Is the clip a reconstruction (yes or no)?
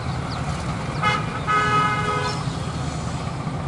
no